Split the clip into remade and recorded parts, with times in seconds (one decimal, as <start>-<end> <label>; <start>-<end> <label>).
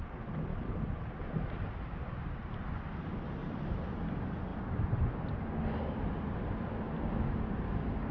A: 0.0-0.5 recorded; 0.5-2.7 remade; 2.7-3.4 recorded; 3.4-3.9 remade; 3.9-8.1 recorded